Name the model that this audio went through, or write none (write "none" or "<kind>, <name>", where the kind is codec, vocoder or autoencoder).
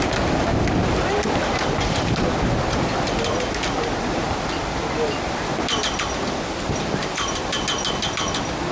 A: none